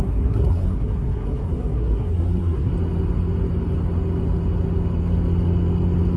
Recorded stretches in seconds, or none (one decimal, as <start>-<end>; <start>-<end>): 2.7-6.2